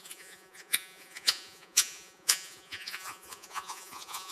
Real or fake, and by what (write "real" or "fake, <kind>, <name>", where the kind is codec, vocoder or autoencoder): fake, vocoder, Vocos